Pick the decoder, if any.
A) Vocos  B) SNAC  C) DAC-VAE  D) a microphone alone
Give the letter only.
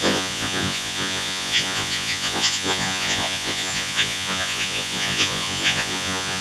A